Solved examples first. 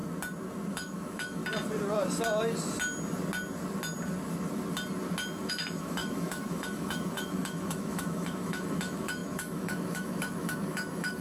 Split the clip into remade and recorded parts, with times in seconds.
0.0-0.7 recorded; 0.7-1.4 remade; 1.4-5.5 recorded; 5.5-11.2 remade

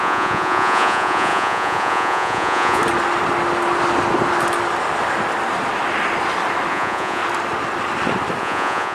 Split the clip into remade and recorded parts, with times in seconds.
0.0-2.8 remade; 2.8-6.7 recorded; 6.7-7.2 remade; 7.2-8.4 recorded; 8.4-8.9 remade

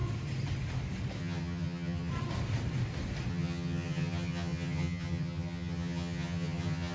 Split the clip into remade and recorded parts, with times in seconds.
0.0-1.2 recorded; 1.2-2.1 remade; 2.1-3.3 recorded; 3.3-6.9 remade